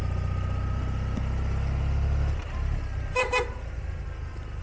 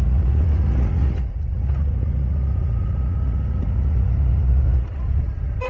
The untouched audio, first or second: first